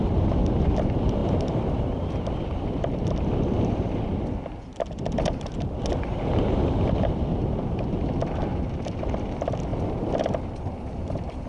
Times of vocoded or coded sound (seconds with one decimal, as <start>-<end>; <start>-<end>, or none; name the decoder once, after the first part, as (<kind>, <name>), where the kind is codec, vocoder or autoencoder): 1.2-4.0 (vocoder, BigVGAN v2); 9.7-11.5